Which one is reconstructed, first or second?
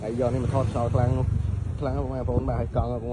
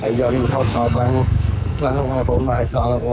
second